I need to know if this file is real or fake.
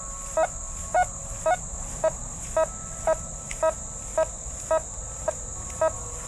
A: real